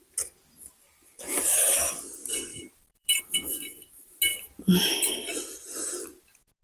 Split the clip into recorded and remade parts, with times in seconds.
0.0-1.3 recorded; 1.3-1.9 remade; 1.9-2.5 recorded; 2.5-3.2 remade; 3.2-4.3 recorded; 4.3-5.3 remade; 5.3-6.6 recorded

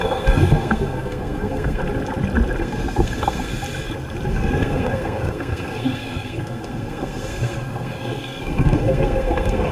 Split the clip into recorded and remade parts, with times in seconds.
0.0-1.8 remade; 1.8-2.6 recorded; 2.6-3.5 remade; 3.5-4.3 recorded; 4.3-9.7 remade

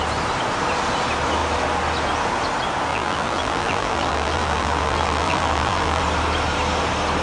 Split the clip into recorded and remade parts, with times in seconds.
0.0-2.9 recorded; 2.9-6.0 remade; 6.0-7.2 recorded

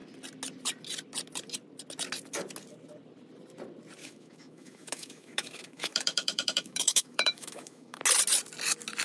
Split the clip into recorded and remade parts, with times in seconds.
0.0-4.0 recorded; 4.0-8.0 remade; 8.0-9.0 recorded